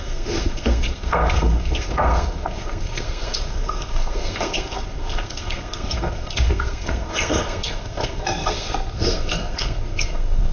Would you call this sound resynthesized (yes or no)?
yes